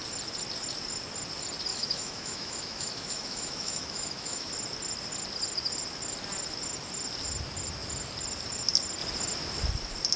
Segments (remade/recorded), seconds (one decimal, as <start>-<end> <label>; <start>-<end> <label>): 0.0-1.7 recorded; 1.7-4.5 remade; 4.5-10.2 recorded